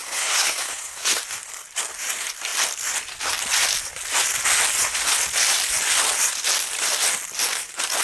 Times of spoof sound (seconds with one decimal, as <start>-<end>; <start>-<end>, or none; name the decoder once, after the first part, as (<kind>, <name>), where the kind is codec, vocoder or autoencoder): 0.0-1.2 (codec, SNAC)